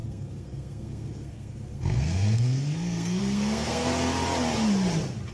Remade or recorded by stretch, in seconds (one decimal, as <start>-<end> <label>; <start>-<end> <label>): 0.0-3.9 remade; 3.9-5.3 recorded